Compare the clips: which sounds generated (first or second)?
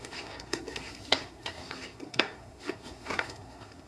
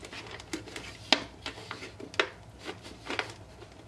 first